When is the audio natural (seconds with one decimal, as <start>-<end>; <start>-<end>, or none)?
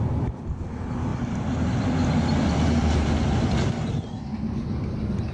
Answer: 0.0-1.1; 3.7-5.3